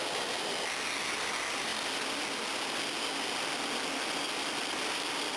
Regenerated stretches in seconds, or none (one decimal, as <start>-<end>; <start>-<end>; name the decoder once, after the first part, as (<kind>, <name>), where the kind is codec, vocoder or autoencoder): none